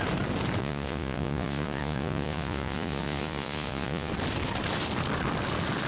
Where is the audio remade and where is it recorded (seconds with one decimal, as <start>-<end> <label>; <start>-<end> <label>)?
0.0-0.6 recorded; 0.6-4.1 remade; 4.1-5.9 recorded